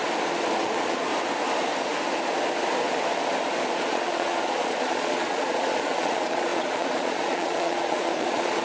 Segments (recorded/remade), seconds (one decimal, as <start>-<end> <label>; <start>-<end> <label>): 0.0-0.6 recorded; 0.6-1.1 remade; 1.1-3.8 recorded; 3.8-8.6 remade